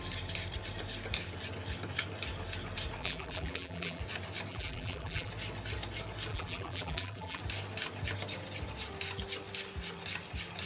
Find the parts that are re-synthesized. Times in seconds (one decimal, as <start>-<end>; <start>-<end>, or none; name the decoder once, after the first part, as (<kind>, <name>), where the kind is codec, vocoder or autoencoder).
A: 3.0-4.0 (vocoder, BigVGAN v2); 4.5-5.3; 6.3-7.4